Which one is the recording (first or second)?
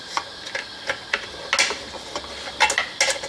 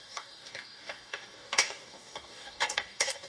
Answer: first